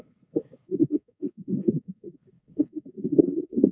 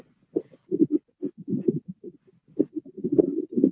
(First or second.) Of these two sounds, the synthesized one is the first